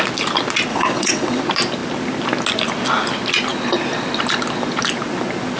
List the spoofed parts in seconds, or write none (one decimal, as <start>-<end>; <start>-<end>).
0.7-1.4